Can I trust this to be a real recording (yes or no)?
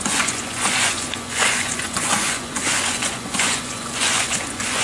no